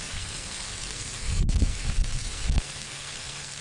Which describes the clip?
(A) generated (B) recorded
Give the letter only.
A